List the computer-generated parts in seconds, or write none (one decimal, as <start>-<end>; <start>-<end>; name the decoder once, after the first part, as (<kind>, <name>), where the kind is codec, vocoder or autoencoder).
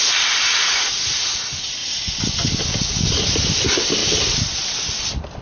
none